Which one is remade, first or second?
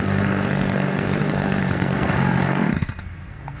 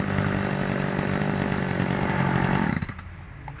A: first